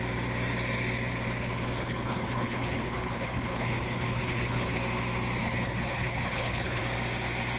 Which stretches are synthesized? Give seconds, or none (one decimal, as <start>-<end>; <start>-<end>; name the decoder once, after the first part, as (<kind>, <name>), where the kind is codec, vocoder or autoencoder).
1.8-4.8 (codec, HILCodec); 5.4-6.8